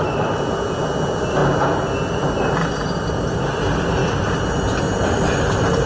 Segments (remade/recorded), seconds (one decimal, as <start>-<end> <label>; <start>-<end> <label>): 0.0-5.9 recorded